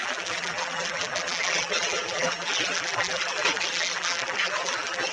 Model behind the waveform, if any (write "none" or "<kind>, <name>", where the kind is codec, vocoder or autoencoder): vocoder, BigVGAN v2